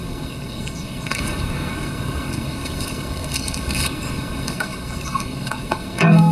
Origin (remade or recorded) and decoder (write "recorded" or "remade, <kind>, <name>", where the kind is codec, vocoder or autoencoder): remade, codec, SNAC